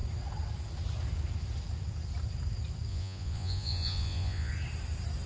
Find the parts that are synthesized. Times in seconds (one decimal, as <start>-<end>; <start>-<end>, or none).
2.9-4.5